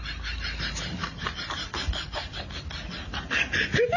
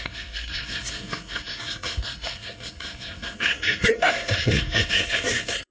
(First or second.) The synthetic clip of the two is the second